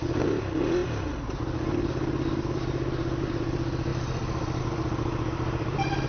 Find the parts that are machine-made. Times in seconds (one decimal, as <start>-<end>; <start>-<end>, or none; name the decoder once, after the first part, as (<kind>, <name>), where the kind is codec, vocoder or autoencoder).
0.0-0.8 (vocoder, BigVGAN v2); 3.2-6.1